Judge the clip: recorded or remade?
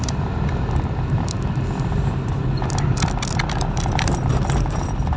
recorded